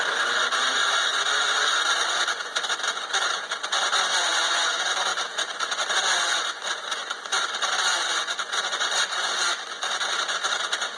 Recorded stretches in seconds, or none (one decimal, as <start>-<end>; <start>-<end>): none